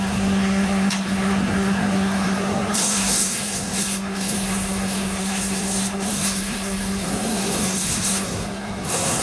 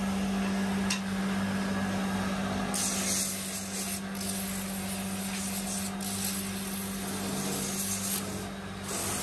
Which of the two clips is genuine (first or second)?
second